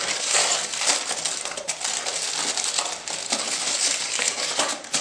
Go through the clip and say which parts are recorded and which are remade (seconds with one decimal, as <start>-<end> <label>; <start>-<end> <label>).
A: 0.0-0.4 remade; 0.4-3.4 recorded; 3.4-5.0 remade